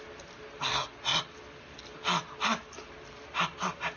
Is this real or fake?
real